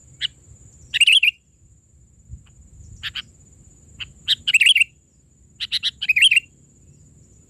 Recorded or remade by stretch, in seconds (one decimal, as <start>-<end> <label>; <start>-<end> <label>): 0.0-7.5 recorded